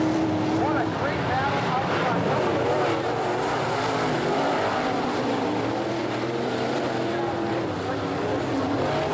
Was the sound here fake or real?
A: real